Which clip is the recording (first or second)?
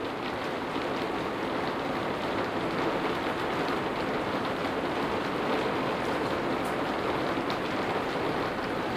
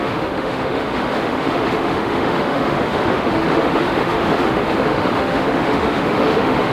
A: first